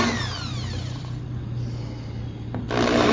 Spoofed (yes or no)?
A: no